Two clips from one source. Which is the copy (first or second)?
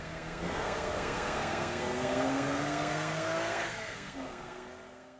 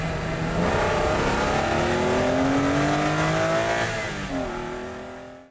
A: first